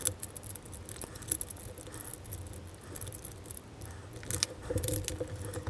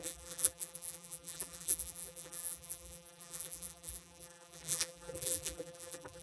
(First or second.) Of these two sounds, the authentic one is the first